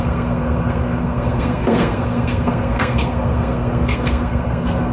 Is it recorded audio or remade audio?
remade